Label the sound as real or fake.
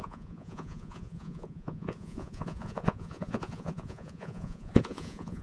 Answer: fake